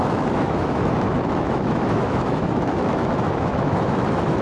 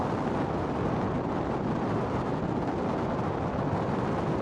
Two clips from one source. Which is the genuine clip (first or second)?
second